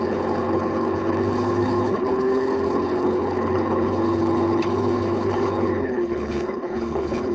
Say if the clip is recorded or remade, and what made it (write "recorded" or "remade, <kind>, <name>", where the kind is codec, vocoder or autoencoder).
remade, codec, HILCodec